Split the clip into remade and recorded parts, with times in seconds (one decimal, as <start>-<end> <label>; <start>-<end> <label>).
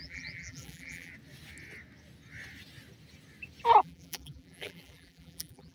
0.0-1.1 remade; 1.1-3.8 recorded; 3.8-5.7 remade